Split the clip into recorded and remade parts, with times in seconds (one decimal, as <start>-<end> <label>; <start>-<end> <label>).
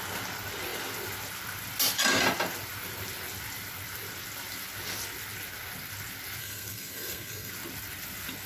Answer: 0.0-6.4 recorded; 6.4-7.5 remade; 7.5-8.5 recorded